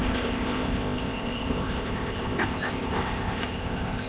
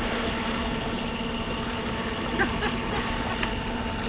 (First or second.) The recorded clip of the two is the second